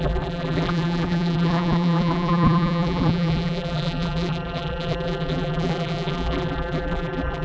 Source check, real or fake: fake